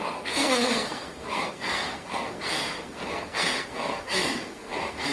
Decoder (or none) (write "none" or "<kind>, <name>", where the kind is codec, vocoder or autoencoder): codec, SNAC